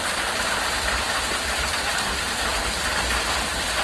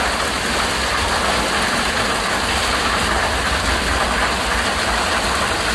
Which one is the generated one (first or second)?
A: first